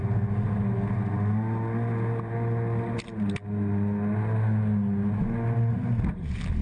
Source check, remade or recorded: recorded